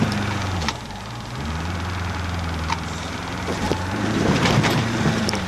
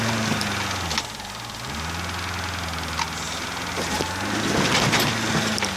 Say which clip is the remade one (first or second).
first